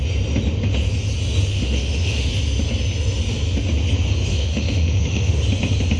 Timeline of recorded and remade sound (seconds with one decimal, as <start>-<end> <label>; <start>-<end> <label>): 0.0-1.5 recorded; 1.5-2.3 remade; 2.3-4.3 recorded; 4.3-5.3 remade; 5.3-6.0 recorded